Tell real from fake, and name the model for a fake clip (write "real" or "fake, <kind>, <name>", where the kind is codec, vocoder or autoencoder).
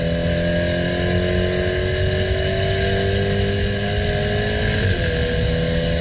real